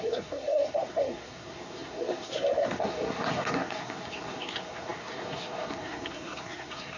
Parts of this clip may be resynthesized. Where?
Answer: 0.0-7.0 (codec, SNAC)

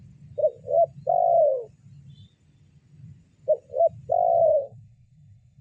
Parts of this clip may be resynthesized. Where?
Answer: 4.5-5.6 (codec, SNAC)